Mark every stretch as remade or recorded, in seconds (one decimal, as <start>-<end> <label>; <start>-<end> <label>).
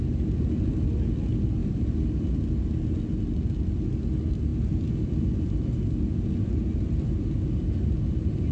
0.0-1.6 recorded; 1.6-2.1 remade; 2.1-8.5 recorded